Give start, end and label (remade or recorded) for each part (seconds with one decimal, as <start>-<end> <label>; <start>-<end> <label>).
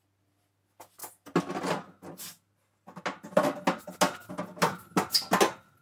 0.0-5.8 recorded